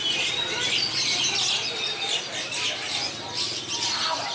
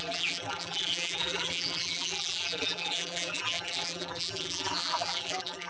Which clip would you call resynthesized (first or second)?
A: second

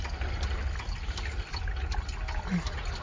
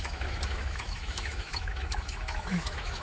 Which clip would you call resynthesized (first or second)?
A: second